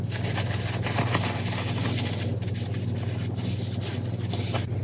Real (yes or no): yes